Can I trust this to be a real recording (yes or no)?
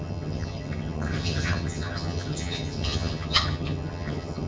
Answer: no